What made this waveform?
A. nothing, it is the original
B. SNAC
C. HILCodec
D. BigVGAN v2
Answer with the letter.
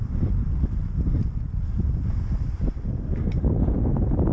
D